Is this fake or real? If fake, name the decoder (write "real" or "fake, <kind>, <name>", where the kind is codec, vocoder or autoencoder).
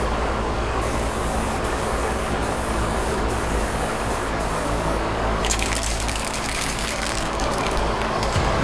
fake, codec, DAC